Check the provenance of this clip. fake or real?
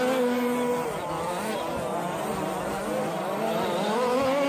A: real